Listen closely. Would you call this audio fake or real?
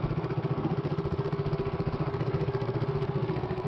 fake